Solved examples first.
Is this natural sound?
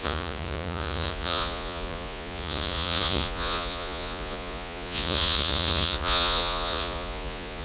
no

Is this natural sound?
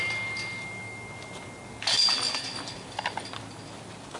yes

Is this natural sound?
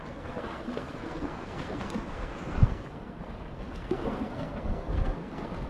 no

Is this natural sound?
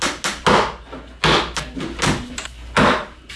yes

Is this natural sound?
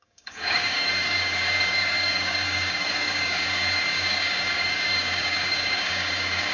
no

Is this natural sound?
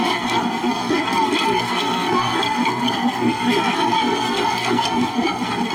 no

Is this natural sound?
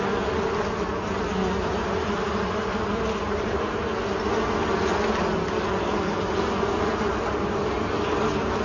yes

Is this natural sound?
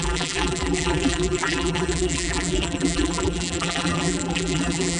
no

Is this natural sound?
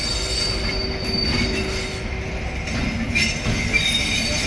yes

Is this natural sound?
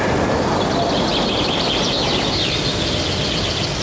yes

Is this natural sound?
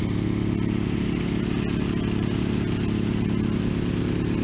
yes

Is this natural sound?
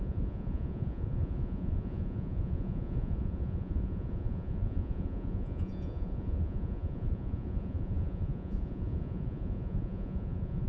no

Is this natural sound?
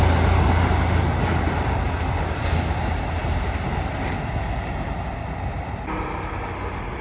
yes